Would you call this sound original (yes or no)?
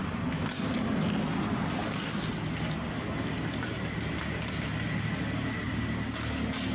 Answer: yes